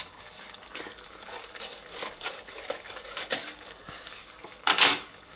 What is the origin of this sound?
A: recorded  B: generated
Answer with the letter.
B